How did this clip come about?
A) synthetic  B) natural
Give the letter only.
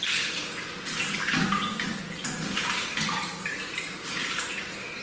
B